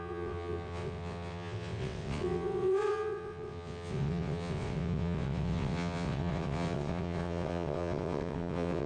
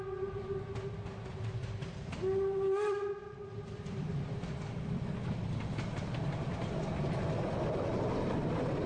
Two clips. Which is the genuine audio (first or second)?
second